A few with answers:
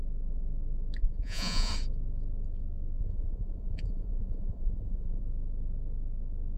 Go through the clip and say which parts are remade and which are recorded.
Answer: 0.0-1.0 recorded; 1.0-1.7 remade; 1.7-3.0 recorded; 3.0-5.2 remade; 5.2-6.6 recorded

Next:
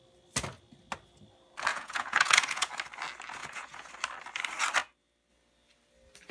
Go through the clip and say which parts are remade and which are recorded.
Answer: 0.0-1.7 recorded; 1.7-2.7 remade; 2.7-3.4 recorded; 3.4-3.9 remade; 3.9-6.3 recorded

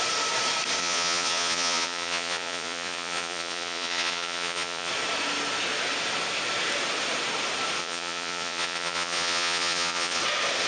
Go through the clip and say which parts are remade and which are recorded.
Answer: 0.0-0.8 recorded; 0.8-4.9 remade; 4.9-7.8 recorded; 7.8-10.2 remade; 10.2-10.7 recorded

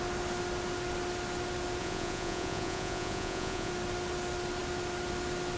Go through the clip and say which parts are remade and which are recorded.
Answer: 0.0-1.8 recorded; 1.8-3.7 remade; 3.7-5.6 recorded

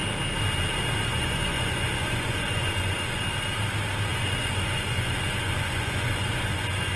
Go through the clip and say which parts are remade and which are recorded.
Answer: 0.0-1.1 recorded; 1.1-3.2 remade; 3.2-4.1 recorded; 4.1-7.0 remade

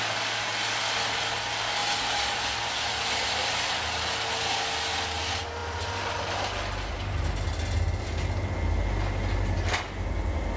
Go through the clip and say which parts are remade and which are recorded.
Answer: 0.0-10.6 recorded

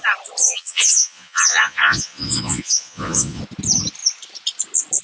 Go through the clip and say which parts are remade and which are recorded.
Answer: 0.0-0.4 recorded; 0.4-3.4 remade; 3.4-5.0 recorded